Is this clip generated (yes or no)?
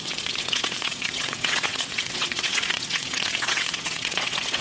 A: yes